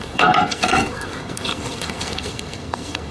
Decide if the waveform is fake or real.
fake